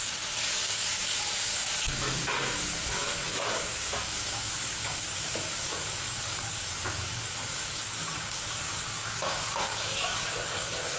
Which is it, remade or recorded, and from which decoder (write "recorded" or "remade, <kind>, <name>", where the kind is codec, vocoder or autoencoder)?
remade, codec, DAC